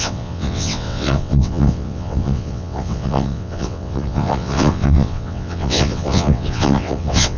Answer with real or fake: fake